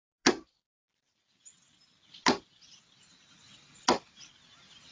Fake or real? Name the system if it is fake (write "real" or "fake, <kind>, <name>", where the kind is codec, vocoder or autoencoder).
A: real